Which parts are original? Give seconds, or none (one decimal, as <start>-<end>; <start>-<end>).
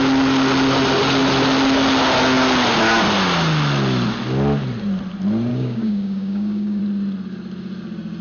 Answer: 0.0-5.5; 6.8-8.2